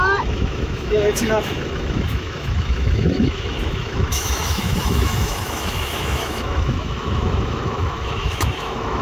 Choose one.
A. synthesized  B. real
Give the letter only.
A